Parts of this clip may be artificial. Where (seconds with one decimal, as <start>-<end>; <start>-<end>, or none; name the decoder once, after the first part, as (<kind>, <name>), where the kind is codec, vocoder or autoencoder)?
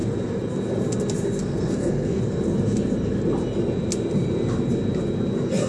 1.4-2.2 (codec, SNAC)